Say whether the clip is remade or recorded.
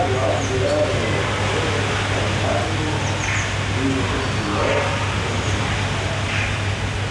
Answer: recorded